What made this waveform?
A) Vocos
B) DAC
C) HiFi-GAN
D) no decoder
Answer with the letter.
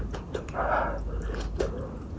D